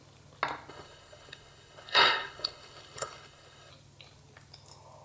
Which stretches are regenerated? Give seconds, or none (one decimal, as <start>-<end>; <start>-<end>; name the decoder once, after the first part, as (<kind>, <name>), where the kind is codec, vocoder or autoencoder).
0.7-3.7 (codec, HILCodec)